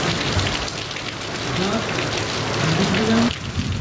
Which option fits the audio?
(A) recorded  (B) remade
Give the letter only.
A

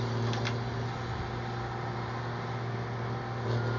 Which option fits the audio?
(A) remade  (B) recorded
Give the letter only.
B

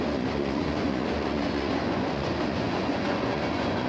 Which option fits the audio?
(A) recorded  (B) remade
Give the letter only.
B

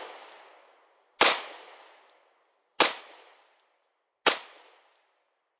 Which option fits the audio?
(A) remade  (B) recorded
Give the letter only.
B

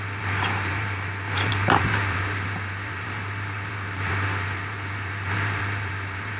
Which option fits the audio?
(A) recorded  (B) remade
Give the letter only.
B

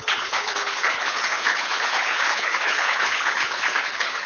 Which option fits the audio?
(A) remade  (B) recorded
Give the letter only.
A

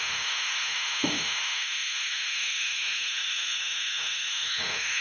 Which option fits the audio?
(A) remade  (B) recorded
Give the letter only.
A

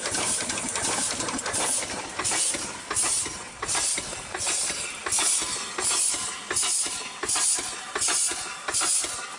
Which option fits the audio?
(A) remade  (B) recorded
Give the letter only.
B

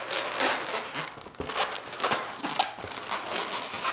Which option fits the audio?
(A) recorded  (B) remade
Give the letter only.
A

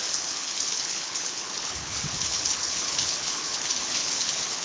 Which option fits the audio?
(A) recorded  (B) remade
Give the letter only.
B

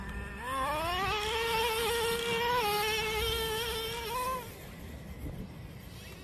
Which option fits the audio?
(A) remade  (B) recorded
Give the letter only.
B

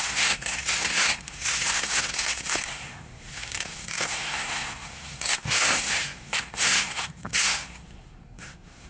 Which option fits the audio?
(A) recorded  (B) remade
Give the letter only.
B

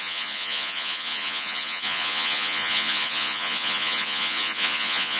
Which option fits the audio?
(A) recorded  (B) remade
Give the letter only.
B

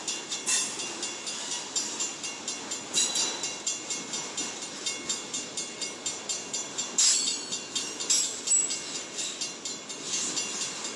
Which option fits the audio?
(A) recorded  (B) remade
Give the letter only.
A